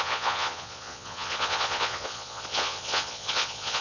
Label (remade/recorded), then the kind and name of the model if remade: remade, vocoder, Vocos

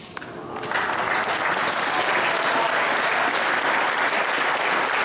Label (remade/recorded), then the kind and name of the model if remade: recorded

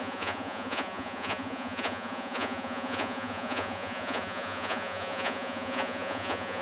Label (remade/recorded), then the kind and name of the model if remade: remade, vocoder, Vocos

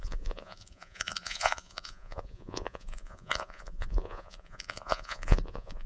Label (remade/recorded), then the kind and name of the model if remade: remade, vocoder, Vocos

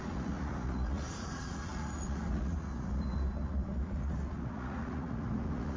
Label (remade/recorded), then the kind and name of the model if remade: remade, vocoder, Vocos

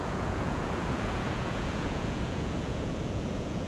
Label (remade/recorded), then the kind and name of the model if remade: remade, vocoder, Vocos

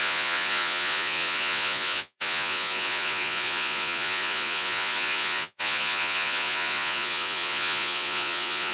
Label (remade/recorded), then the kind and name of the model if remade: remade, vocoder, Vocos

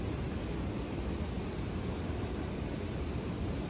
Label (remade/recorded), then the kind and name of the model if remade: recorded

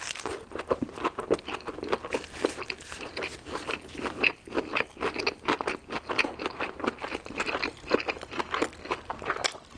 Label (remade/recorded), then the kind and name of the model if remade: recorded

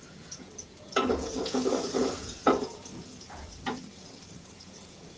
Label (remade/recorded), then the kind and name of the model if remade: remade, vocoder, Vocos